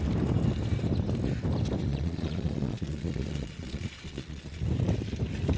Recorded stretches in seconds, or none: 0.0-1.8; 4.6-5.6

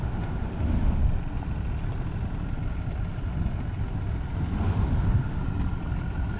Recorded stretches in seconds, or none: 1.0-4.6; 5.4-6.4